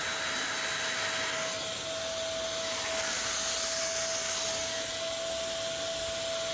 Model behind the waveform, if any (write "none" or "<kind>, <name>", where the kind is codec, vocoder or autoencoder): none